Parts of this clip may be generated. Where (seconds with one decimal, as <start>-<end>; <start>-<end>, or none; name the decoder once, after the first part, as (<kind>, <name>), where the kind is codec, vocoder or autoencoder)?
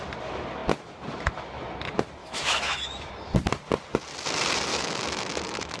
2.2-3.1 (autoencoder, DAC-VAE); 4.7-5.8